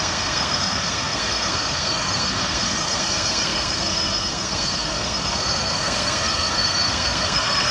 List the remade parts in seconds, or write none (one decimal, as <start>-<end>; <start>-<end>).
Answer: 0.0-7.7